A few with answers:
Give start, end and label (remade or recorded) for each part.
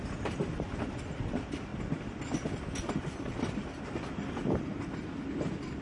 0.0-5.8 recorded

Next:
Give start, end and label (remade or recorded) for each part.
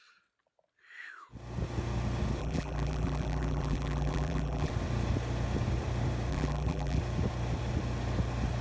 0.0-2.4 recorded; 2.4-4.7 remade; 4.7-6.3 recorded; 6.3-7.0 remade; 7.0-8.6 recorded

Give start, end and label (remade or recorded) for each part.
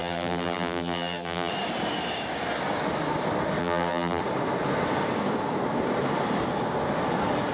0.0-1.5 remade; 1.5-3.6 recorded; 3.6-4.2 remade; 4.2-7.5 recorded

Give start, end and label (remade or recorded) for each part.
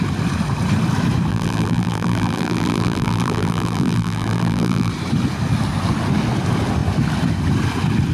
0.0-1.3 recorded; 1.3-4.9 remade; 4.9-8.1 recorded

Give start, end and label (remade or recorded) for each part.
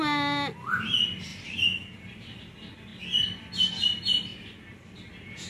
0.0-1.3 recorded; 1.3-2.0 remade; 2.0-2.9 recorded; 2.9-3.7 remade; 3.7-5.5 recorded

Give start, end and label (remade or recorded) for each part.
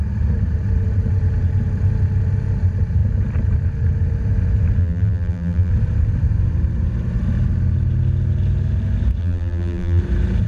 0.0-4.8 recorded; 4.8-5.7 remade; 5.7-9.2 recorded; 9.2-10.0 remade; 10.0-10.5 recorded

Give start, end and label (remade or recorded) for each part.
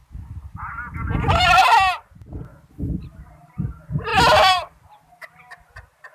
0.0-1.5 remade; 1.5-4.1 recorded; 4.1-5.0 remade; 5.0-6.1 recorded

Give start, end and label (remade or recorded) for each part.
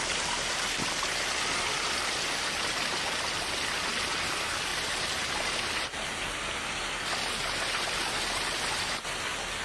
0.0-4.7 recorded; 4.7-6.4 remade; 6.4-9.6 recorded